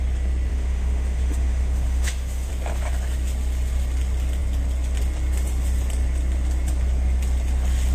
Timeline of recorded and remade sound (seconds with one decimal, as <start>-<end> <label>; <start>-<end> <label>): 0.0-0.5 recorded; 0.5-2.5 remade; 2.5-7.9 recorded